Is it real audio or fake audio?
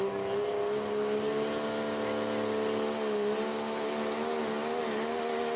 real